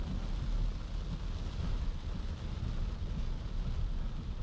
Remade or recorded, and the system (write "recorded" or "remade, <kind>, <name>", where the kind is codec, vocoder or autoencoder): recorded